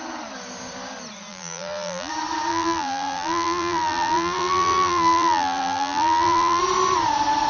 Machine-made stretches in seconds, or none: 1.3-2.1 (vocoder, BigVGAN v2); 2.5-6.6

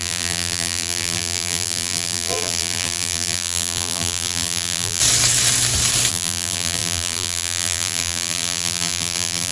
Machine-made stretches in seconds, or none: 0.0-5.0 (vocoder, BigVGAN v2); 6.1-9.5

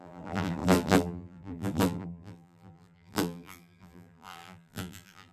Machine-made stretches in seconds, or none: 0.0-5.3 (vocoder, BigVGAN v2)